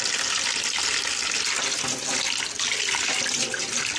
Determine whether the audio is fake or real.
real